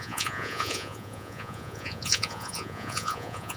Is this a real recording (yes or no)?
no